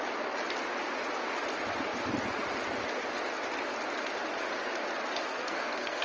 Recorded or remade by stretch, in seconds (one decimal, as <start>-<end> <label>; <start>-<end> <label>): 0.0-5.3 recorded; 5.3-6.0 remade

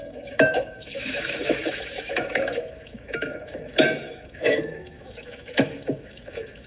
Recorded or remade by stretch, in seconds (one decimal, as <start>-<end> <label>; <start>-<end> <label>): 0.0-6.7 remade

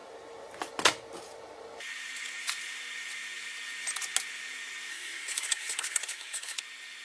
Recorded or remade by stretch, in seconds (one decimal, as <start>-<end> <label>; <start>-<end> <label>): 0.0-4.9 recorded; 4.9-6.6 remade; 6.6-7.0 recorded